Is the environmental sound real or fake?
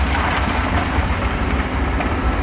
fake